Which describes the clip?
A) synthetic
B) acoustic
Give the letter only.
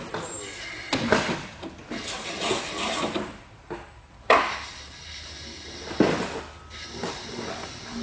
B